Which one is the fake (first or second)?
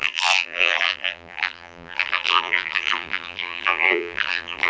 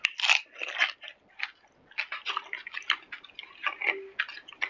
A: first